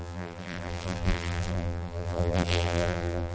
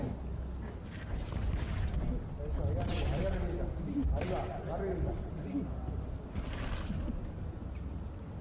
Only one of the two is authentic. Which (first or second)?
second